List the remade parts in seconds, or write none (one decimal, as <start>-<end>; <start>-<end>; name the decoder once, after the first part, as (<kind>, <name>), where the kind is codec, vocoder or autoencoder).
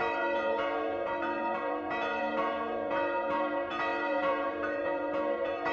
0.0-5.7 (vocoder, Vocos)